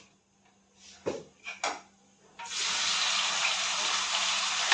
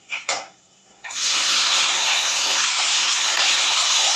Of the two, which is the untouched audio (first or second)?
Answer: first